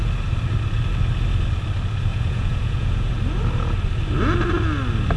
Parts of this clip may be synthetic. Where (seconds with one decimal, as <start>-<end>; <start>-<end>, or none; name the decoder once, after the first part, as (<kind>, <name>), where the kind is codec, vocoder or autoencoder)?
2.1-3.1 (vocoder, Vocos)